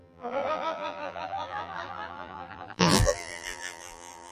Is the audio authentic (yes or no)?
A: no